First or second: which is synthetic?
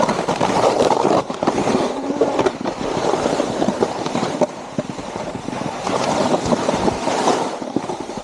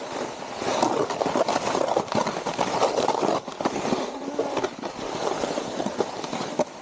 first